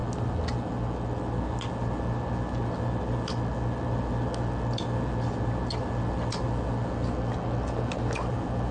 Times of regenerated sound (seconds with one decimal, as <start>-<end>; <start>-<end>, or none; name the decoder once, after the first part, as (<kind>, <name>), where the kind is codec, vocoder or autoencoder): none